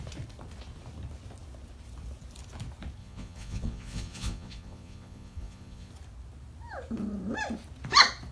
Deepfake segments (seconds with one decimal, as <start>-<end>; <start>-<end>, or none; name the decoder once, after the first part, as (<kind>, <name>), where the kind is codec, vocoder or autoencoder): 3.0-5.9 (vocoder, Vocos)